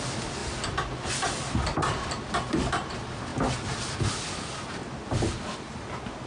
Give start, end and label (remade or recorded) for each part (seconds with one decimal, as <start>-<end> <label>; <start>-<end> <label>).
0.0-0.4 remade; 0.4-1.1 recorded; 1.1-4.8 remade; 4.8-6.3 recorded